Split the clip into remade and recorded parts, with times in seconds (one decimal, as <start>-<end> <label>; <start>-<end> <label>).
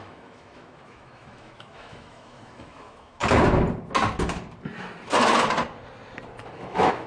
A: 0.0-3.2 remade; 3.2-6.4 recorded; 6.4-7.1 remade